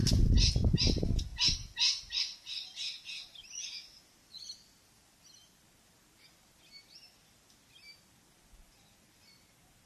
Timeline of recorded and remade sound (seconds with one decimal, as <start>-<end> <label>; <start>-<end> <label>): 0.0-9.9 recorded